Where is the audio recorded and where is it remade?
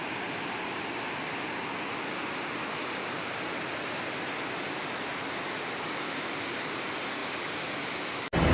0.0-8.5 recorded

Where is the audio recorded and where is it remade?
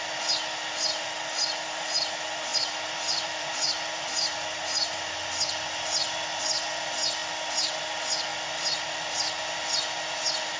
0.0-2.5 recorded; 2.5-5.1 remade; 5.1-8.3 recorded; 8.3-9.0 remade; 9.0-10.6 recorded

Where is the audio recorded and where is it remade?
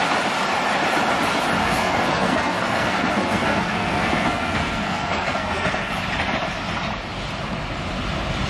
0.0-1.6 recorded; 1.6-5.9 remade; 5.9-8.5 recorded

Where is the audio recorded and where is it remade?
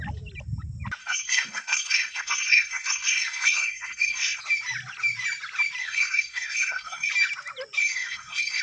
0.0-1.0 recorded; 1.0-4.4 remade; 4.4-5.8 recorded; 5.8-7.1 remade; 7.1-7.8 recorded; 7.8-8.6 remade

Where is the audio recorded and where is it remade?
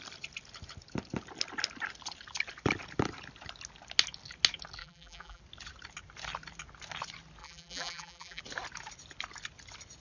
0.0-4.8 recorded; 4.8-5.4 remade; 5.4-7.4 recorded; 7.4-8.4 remade; 8.4-10.0 recorded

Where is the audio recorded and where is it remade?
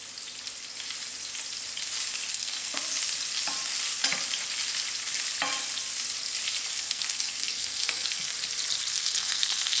0.0-2.3 recorded; 2.3-2.8 remade; 2.8-6.7 recorded; 6.7-8.3 remade; 8.3-8.9 recorded; 8.9-9.8 remade